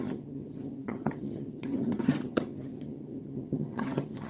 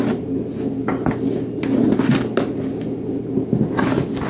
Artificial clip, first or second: first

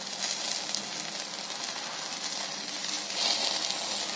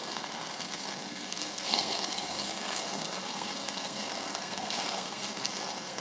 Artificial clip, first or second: second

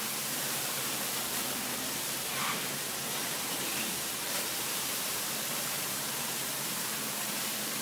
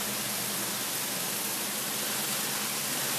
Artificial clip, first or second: first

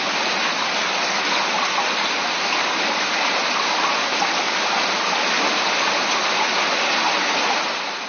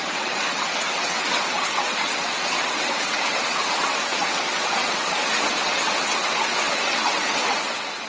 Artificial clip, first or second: second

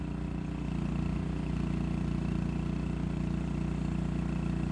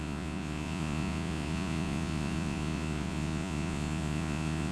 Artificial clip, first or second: second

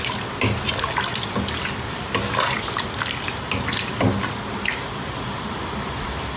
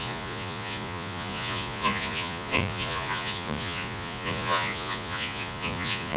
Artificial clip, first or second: second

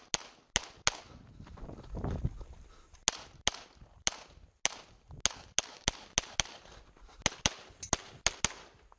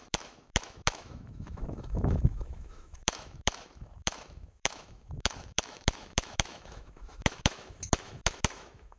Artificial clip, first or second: second